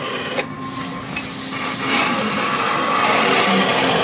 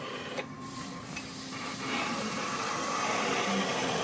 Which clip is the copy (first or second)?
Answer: second